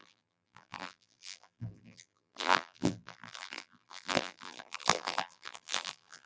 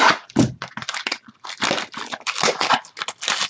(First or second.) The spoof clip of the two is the first